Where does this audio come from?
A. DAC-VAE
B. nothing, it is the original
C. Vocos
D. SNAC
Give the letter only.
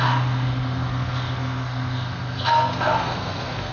D